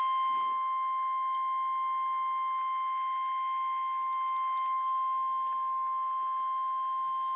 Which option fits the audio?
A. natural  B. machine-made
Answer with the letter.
A